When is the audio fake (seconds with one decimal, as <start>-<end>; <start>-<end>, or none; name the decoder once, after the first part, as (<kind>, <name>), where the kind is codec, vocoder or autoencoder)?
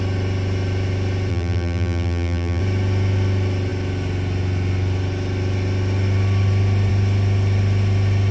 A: 1.3-2.6 (vocoder, BigVGAN v2)